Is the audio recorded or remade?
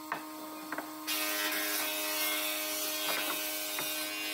recorded